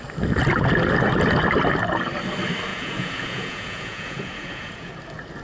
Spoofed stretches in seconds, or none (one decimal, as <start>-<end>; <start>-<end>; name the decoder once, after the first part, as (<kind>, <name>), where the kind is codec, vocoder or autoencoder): 2.7-4.9 (vocoder, Vocos)